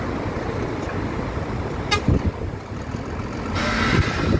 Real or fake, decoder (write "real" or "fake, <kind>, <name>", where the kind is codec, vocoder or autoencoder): real